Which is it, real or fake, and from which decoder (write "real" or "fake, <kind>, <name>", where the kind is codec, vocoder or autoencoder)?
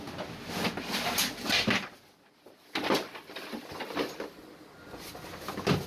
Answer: real